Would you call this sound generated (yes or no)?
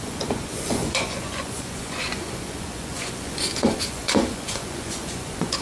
yes